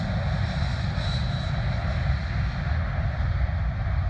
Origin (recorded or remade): recorded